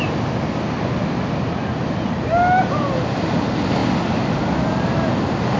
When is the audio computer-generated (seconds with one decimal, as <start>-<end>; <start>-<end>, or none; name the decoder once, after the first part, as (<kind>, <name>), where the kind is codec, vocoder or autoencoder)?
none